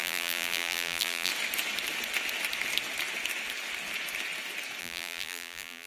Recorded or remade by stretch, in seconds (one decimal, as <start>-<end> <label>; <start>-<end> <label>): 0.0-1.3 remade; 1.3-4.8 recorded; 4.8-5.9 remade